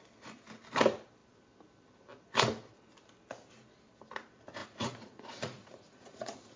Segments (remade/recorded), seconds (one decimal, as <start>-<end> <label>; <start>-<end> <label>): 0.0-4.6 recorded; 4.6-6.6 remade